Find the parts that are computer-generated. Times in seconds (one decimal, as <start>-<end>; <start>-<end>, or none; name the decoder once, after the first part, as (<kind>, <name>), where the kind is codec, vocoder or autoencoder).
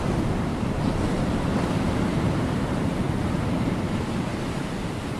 0.0-5.2 (vocoder, BigVGAN v2)